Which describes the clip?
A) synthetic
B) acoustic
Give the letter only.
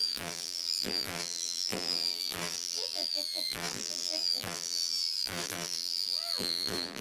A